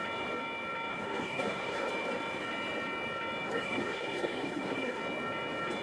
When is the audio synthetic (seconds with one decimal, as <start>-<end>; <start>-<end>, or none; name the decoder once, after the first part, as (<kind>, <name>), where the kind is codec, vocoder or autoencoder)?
0.9-1.9 (codec, SNAC); 3.5-5.0